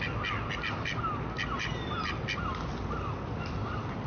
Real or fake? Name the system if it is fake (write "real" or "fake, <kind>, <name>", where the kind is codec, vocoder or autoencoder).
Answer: real